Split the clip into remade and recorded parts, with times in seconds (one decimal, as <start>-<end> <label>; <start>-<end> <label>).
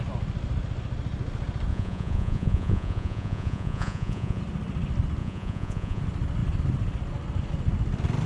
0.0-1.7 recorded; 1.7-4.4 remade; 4.4-5.2 recorded; 5.2-6.0 remade; 6.0-8.3 recorded